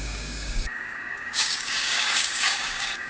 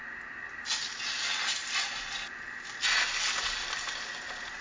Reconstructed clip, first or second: first